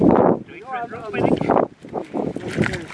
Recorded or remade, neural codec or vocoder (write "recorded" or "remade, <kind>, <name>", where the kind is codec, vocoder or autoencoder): recorded